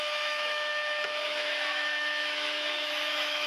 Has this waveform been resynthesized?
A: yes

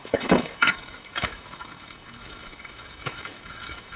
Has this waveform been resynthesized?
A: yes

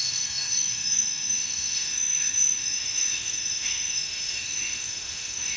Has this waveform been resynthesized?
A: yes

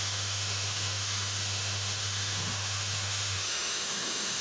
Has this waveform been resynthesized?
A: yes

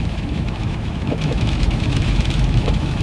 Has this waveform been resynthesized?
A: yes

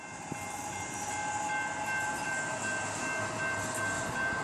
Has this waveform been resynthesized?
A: no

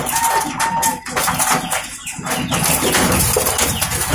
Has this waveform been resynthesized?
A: no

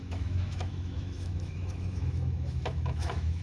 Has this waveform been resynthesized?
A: yes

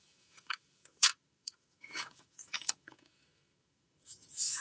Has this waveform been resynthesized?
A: yes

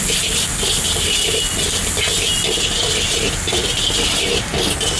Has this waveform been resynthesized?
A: no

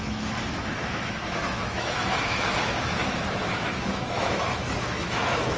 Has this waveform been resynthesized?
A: yes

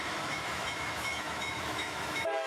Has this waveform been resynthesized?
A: yes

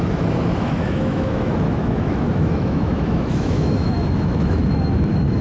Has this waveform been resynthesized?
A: yes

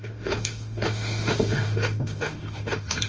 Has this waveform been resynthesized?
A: yes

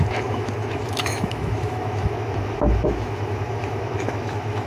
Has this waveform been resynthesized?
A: yes